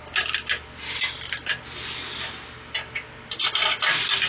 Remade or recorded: recorded